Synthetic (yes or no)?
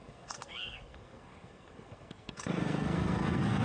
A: yes